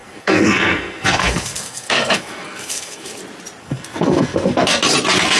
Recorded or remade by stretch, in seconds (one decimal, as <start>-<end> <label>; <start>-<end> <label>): 0.0-3.2 remade; 3.2-3.6 recorded; 3.6-4.8 remade; 4.8-5.4 recorded